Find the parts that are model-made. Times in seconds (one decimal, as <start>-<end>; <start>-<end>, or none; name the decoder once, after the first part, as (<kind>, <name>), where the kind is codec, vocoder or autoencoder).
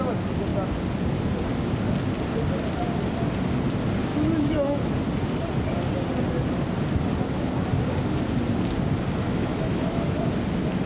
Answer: 4.1-4.8 (autoencoder, DAC-VAE); 9.2-10.2